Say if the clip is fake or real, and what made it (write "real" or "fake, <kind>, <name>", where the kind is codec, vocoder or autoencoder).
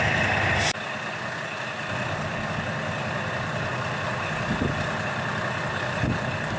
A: real